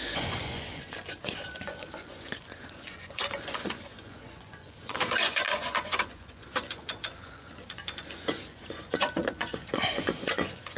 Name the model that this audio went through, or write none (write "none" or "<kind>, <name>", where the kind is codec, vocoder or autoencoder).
vocoder, Vocos